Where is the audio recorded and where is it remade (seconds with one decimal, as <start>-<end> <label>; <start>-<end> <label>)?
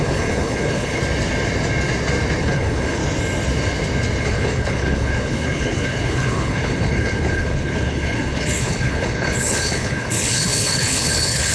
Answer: 0.0-1.0 remade; 1.0-2.4 recorded; 2.4-3.0 remade; 3.0-4.2 recorded; 4.2-11.5 remade